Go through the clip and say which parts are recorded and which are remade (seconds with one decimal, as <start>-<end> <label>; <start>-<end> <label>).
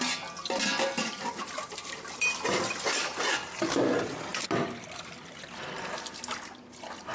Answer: 0.0-1.0 recorded; 1.0-2.1 remade; 2.1-7.1 recorded